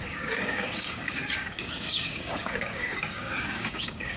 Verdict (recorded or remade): remade